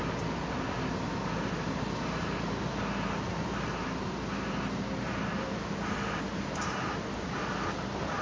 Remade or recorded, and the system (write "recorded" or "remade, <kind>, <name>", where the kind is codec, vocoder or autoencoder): recorded